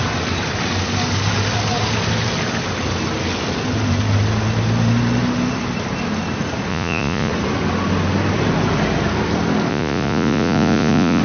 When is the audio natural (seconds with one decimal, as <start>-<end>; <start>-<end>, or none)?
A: 0.0-6.7; 7.3-9.7